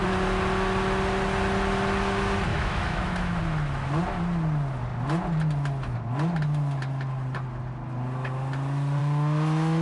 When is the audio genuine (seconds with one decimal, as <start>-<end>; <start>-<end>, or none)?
0.0-2.5; 3.4-9.8